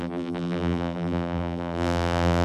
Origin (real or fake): fake